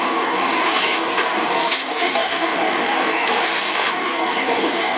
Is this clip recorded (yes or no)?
no